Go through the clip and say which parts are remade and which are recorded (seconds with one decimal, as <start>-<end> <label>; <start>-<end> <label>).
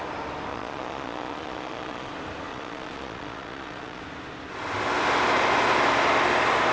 0.0-0.5 recorded; 0.5-2.1 remade; 2.1-2.5 recorded; 2.5-4.0 remade; 4.0-6.7 recorded